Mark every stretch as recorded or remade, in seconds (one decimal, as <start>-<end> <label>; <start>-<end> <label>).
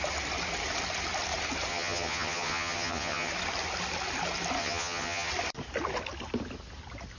0.0-1.7 recorded; 1.7-3.3 remade; 3.3-4.6 recorded; 4.6-5.3 remade; 5.3-7.2 recorded